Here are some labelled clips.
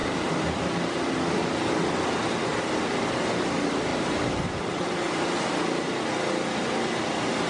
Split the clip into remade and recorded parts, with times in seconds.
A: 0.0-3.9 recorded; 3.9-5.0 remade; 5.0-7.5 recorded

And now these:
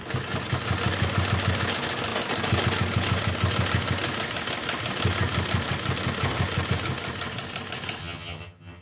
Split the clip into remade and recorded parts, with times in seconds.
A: 0.0-8.0 recorded; 8.0-8.8 remade